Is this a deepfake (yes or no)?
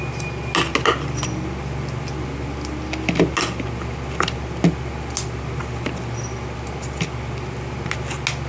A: no